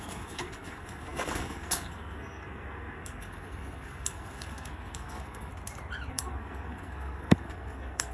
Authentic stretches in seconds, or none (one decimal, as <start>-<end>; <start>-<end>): 5.5-6.1